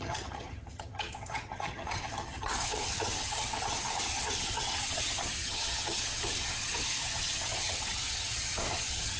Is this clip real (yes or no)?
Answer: no